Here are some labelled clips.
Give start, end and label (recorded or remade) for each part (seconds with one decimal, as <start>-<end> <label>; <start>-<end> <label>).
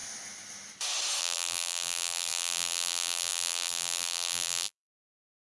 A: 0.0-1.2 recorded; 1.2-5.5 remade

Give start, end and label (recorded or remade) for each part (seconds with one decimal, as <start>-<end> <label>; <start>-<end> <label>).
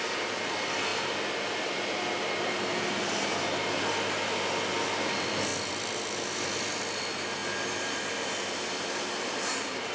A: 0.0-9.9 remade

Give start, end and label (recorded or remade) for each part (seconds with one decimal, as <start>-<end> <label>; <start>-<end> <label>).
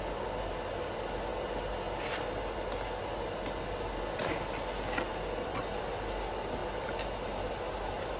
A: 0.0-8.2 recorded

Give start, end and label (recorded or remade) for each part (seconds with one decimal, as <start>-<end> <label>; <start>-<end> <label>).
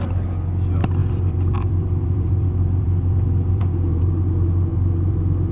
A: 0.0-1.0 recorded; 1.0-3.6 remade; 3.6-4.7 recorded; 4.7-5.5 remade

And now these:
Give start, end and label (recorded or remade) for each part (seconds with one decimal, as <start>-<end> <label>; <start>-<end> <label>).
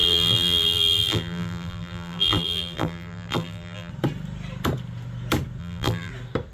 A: 0.0-3.9 remade; 3.9-5.6 recorded; 5.6-6.1 remade; 6.1-6.5 recorded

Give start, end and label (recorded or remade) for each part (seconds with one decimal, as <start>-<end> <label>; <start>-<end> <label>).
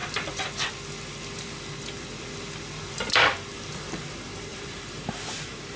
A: 0.0-4.5 recorded; 4.5-5.8 remade